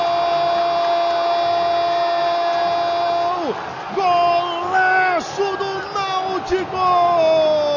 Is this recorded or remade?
recorded